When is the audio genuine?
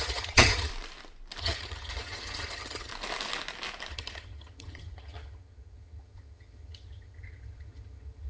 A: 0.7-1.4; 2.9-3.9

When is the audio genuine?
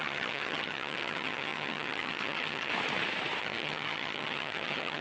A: 2.7-3.4